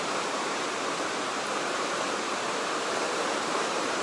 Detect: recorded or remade remade